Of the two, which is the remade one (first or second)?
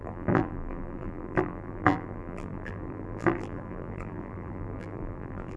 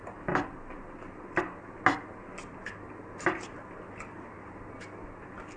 first